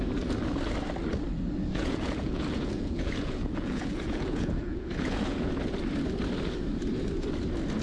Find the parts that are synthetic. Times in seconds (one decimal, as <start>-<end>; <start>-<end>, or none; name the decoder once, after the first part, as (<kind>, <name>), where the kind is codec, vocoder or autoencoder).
1.7-5.5 (vocoder, Vocos)